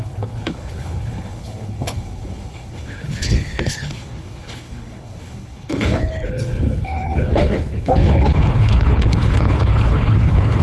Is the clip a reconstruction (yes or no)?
yes